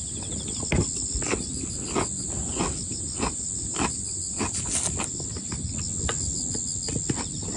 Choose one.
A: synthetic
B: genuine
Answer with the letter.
B